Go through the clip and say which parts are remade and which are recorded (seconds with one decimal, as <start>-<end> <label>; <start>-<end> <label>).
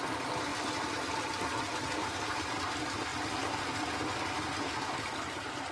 0.0-0.5 recorded; 0.5-2.5 remade; 2.5-3.1 recorded; 3.1-3.6 remade; 3.6-5.7 recorded